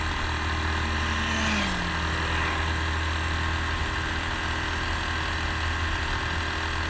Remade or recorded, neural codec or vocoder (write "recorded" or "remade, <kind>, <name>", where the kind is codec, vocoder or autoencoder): recorded